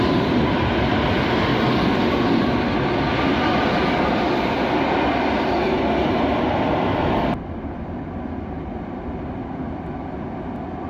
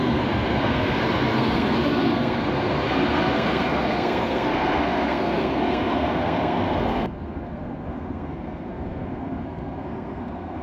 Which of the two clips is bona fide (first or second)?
first